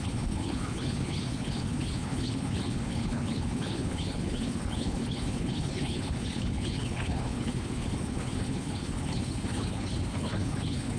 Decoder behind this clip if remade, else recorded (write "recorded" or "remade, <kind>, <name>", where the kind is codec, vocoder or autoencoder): remade, codec, HILCodec